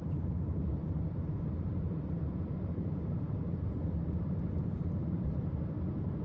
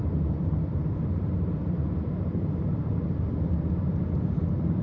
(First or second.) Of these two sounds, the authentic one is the second